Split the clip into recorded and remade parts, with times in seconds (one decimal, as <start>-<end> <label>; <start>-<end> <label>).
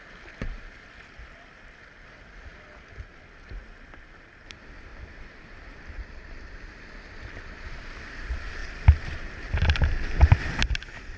0.0-4.9 recorded; 4.9-5.8 remade; 5.8-8.6 recorded; 8.6-10.7 remade; 10.7-11.2 recorded